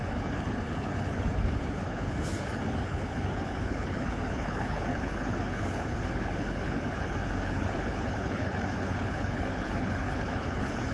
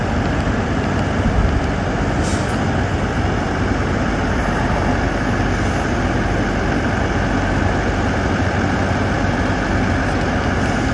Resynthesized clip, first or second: first